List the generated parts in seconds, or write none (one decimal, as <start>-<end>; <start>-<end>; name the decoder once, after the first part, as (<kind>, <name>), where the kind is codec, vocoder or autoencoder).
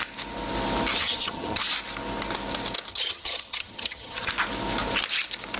1.0-1.6 (vocoder, HiFi-GAN); 2.9-4.3